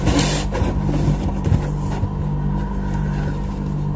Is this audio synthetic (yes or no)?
no